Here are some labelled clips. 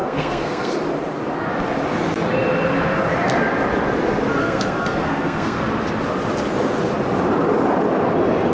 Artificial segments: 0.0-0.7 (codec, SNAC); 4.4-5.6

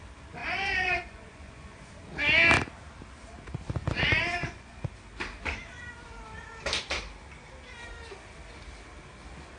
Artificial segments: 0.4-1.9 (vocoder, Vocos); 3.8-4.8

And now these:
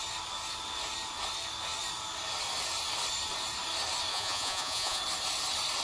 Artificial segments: 4.1-5.0 (vocoder, Vocos)